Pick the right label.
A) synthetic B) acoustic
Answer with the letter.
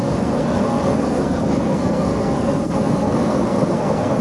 A